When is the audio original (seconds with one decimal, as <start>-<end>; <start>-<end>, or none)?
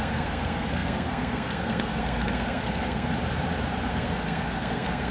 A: 3.1-3.9